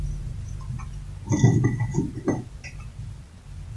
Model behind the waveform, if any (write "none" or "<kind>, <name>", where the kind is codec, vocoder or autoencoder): none